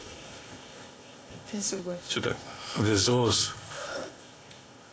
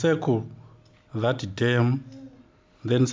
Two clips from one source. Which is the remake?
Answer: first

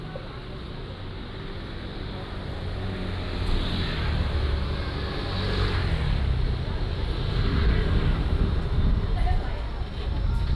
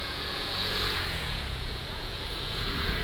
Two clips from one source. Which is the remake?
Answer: second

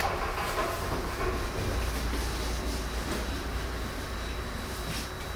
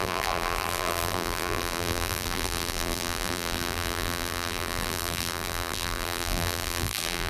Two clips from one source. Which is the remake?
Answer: second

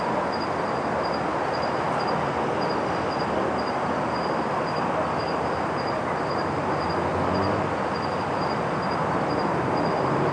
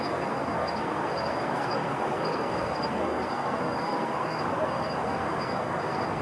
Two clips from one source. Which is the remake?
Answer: second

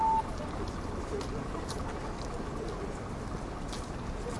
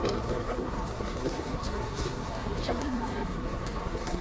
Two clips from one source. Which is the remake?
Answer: second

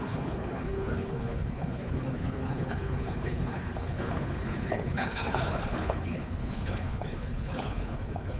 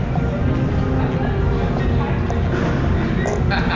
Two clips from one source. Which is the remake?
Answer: first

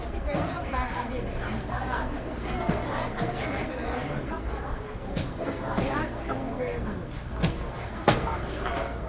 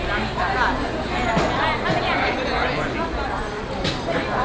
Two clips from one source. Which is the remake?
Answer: first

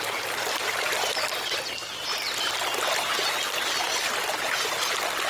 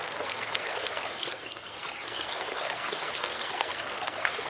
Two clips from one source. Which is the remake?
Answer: second